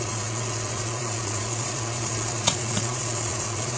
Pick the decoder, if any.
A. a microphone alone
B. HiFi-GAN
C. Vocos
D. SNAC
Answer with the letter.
C